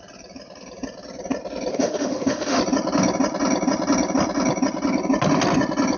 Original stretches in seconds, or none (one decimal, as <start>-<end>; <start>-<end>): 0.0-1.7; 2.6-6.0